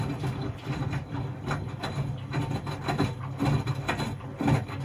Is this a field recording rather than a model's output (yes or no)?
yes